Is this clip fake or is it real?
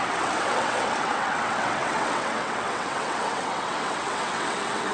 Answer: fake